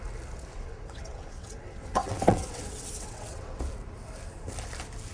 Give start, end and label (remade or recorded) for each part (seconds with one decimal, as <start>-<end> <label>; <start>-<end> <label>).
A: 0.0-0.5 recorded; 0.5-3.6 remade; 3.6-5.1 recorded